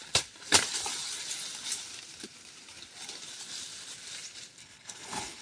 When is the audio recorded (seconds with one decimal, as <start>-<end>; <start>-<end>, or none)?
0.0-4.6